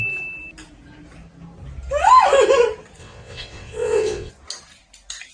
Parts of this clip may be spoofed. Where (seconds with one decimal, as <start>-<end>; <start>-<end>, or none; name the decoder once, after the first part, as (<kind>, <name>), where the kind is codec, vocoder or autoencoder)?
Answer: 3.0-4.3 (vocoder, WaveNeXt)

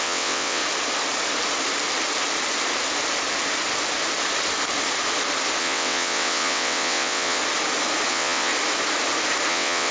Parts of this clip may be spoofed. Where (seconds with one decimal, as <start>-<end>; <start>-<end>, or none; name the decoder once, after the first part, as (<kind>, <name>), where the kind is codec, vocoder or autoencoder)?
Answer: 0.0-0.6 (vocoder, WaveNeXt); 5.6-7.4; 8.1-8.5; 9.5-9.9

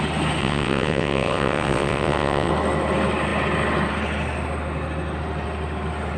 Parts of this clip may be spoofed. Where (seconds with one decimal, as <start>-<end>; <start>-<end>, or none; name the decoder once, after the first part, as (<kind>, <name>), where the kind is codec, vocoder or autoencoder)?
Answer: 0.4-2.5 (vocoder, WaveNeXt)

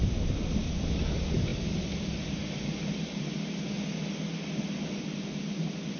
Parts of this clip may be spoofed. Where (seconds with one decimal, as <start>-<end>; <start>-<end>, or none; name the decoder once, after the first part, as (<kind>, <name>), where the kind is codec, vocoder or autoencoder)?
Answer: none

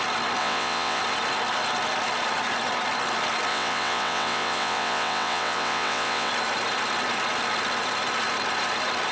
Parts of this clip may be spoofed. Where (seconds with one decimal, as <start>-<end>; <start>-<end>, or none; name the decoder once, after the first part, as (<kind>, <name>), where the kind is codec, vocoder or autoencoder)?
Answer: 0.4-1.0 (vocoder, WaveNeXt); 3.5-6.3

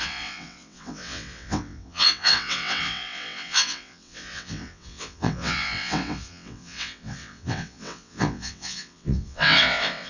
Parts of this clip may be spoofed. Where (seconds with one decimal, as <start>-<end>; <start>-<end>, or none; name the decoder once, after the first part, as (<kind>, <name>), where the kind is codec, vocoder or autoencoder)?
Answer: 0.0-10.1 (vocoder, WaveNeXt)

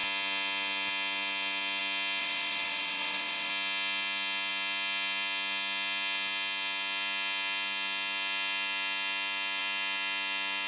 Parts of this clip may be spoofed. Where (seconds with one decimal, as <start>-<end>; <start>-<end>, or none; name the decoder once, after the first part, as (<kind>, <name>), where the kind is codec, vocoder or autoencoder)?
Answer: 2.2-3.5 (vocoder, WaveNeXt)

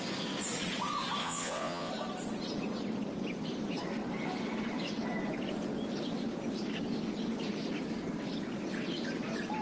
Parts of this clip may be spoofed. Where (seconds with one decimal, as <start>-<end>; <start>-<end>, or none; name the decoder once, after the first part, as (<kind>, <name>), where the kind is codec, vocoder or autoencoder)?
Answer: 1.2-1.9 (vocoder, WaveNeXt)